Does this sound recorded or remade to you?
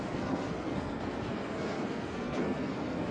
remade